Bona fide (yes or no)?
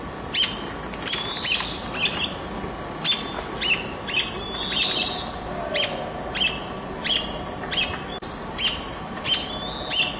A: yes